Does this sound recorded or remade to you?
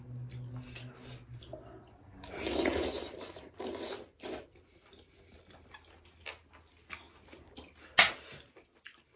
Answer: recorded